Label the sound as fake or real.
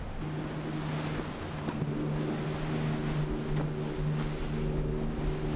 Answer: real